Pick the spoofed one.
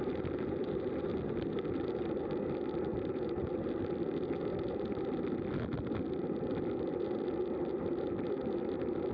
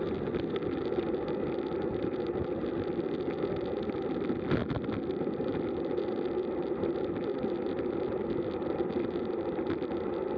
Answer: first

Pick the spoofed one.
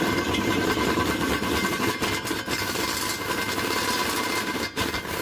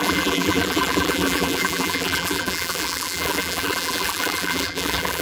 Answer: second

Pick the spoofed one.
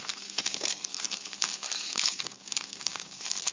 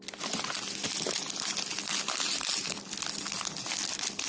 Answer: first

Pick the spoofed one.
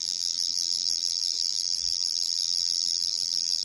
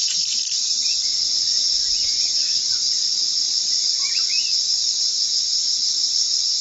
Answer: first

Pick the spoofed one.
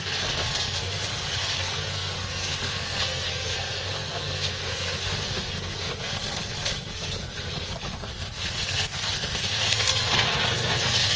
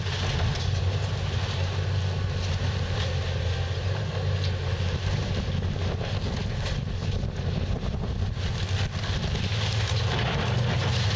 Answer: first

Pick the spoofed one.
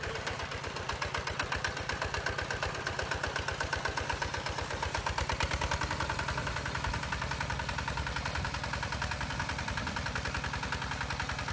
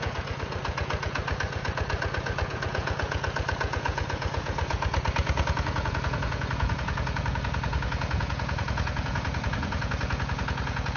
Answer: second